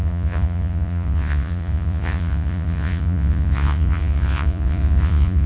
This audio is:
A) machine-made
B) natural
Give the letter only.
A